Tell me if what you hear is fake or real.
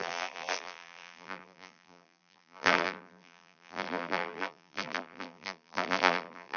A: fake